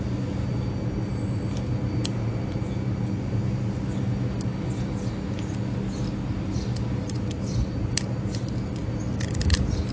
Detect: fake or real real